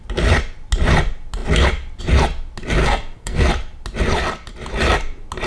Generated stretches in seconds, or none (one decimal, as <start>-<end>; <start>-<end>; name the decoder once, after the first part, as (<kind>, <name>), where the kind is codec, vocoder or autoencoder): 2.8-3.5 (codec, SNAC)